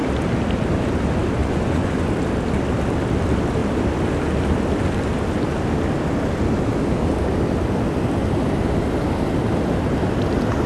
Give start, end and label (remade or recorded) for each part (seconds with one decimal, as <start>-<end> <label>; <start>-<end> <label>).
0.0-1.4 recorded; 1.4-2.1 remade; 2.1-10.7 recorded